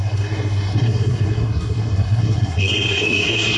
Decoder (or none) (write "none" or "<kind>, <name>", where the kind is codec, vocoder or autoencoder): codec, SNAC